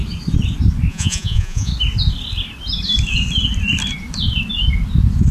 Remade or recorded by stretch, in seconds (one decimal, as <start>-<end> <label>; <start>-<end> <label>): 0.0-0.9 recorded; 0.9-1.7 remade; 1.7-5.3 recorded